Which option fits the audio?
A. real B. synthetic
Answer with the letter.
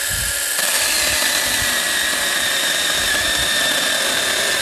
A